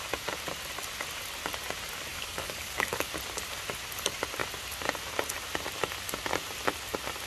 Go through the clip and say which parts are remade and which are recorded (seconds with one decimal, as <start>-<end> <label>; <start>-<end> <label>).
0.0-2.1 recorded; 2.1-3.1 remade; 3.1-7.3 recorded

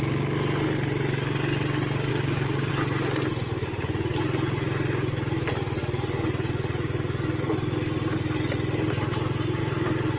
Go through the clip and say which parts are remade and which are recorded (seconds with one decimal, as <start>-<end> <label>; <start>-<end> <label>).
0.0-2.1 recorded; 2.1-2.7 remade; 2.7-10.2 recorded

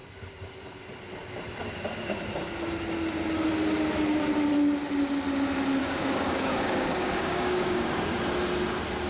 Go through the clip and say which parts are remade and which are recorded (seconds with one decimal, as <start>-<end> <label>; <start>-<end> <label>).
0.0-5.8 recorded; 5.8-8.2 remade; 8.2-9.1 recorded

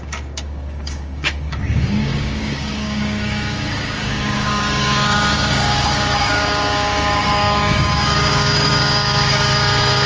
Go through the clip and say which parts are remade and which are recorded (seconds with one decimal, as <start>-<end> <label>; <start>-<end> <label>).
0.0-10.1 remade

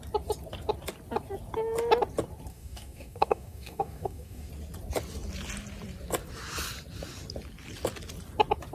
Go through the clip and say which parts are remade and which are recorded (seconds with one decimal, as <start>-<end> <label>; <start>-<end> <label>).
0.0-2.5 recorded; 2.5-4.5 remade; 4.5-8.7 recorded